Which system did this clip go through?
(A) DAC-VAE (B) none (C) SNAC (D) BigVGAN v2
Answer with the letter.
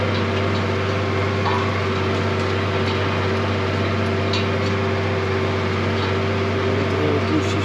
B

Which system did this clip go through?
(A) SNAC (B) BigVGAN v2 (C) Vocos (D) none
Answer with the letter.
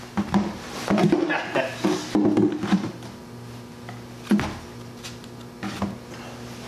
D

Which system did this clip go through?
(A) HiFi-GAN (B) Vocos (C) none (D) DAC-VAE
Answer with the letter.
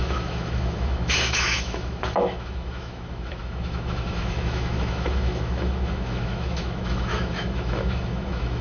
D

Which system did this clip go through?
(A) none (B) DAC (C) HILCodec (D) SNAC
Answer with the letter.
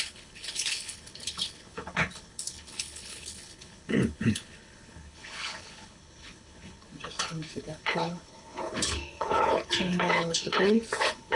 C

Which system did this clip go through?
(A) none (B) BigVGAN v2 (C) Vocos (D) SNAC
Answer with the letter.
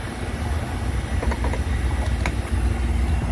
A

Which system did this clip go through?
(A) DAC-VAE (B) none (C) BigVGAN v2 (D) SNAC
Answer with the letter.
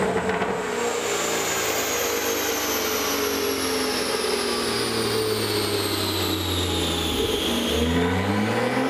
B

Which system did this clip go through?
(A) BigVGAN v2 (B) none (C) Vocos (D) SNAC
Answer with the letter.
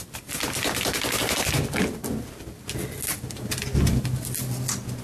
B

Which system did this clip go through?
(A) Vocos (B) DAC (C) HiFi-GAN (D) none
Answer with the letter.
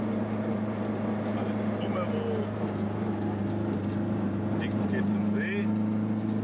D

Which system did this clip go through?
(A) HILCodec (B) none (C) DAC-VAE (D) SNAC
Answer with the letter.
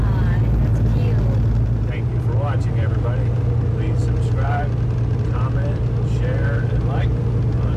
B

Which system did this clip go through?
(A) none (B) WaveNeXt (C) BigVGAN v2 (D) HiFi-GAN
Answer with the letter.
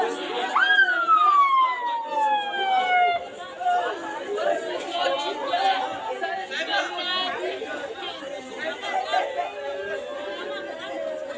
A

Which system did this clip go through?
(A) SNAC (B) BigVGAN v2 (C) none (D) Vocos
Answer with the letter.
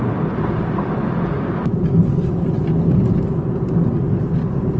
C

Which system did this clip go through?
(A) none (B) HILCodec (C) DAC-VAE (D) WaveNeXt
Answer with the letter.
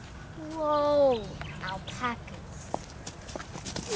A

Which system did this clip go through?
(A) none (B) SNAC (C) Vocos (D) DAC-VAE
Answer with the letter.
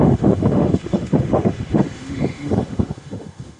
D